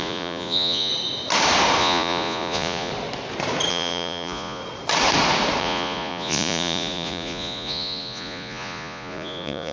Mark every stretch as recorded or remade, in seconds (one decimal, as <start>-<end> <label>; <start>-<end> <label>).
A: 0.0-0.9 remade; 0.9-1.8 recorded; 1.8-2.9 remade; 2.9-3.7 recorded; 3.7-4.6 remade; 4.6-5.6 recorded; 5.6-9.7 remade

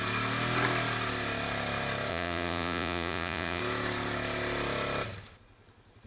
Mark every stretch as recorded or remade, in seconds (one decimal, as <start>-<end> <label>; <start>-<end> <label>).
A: 0.0-2.1 recorded; 2.1-3.6 remade; 3.6-6.1 recorded

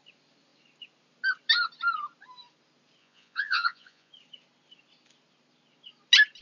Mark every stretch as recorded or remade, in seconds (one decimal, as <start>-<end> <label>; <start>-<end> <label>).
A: 0.0-3.0 recorded; 3.0-4.1 remade; 4.1-6.4 recorded

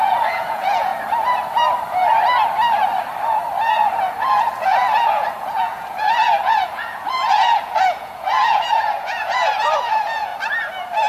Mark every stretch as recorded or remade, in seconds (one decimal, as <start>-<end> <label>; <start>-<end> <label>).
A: 0.0-0.9 remade; 0.9-4.2 recorded; 4.2-10.3 remade; 10.3-11.1 recorded